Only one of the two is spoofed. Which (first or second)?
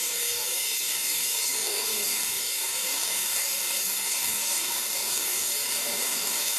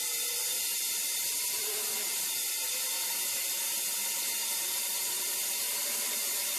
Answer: first